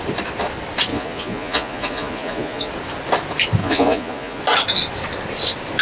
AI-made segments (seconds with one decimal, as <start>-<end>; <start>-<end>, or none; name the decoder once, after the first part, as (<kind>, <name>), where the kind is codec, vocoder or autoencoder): 0.9-2.7 (vocoder, Vocos); 3.6-4.4